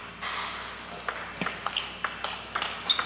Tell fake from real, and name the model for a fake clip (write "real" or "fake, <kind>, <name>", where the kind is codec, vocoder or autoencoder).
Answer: real